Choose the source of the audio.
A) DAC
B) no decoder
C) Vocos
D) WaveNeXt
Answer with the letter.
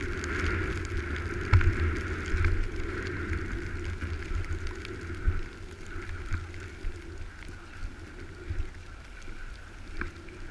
B